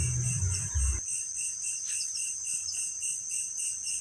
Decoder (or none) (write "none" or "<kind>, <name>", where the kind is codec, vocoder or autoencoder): none